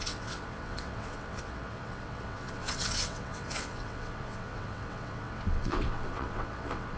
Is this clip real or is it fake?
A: fake